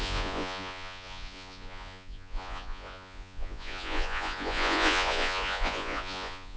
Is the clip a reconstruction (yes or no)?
yes